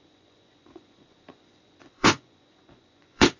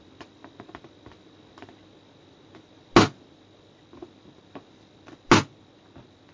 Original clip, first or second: second